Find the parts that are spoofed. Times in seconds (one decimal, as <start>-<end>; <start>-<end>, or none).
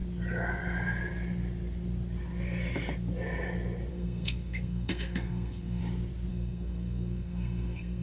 3.9-5.8; 6.3-8.0